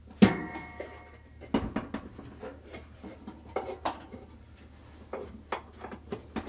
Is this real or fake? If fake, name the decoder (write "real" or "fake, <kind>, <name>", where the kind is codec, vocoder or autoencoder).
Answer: real